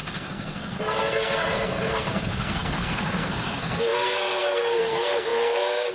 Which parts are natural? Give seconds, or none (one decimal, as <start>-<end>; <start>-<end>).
none